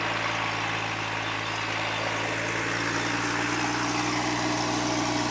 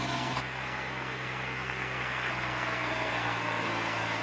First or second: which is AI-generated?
second